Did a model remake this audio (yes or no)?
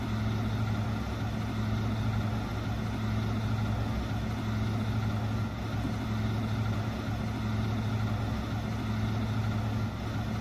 no